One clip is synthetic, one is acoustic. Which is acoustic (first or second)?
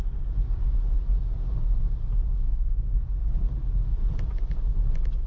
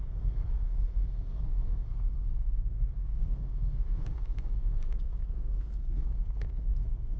first